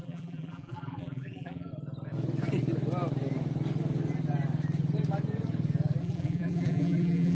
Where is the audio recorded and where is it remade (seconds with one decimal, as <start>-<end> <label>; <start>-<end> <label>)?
0.0-1.7 remade; 1.7-6.0 recorded; 6.0-7.3 remade